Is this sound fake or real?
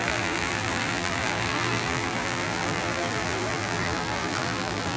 fake